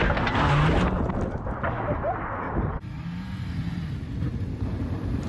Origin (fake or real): real